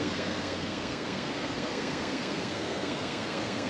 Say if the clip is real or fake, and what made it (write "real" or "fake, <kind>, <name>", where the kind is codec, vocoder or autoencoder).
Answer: fake, codec, SNAC